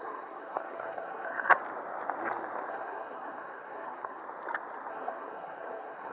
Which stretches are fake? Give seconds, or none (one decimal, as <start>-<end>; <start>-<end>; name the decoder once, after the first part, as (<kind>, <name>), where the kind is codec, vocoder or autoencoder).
0.0-1.6 (codec, SNAC); 2.7-4.2; 4.9-6.1